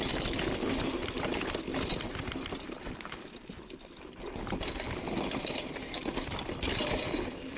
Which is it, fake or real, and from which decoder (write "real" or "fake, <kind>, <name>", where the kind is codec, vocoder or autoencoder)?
real